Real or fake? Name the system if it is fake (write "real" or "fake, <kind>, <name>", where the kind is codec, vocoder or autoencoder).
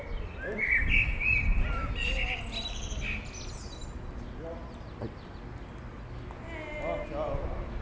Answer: real